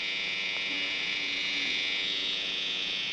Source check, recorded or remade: remade